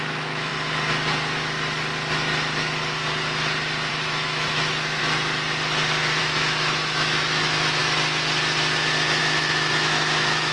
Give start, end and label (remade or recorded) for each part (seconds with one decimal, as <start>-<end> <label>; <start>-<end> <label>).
0.0-0.5 remade; 0.5-3.9 recorded; 3.9-5.0 remade; 5.0-6.2 recorded; 6.2-7.8 remade; 7.8-9.2 recorded; 9.2-10.5 remade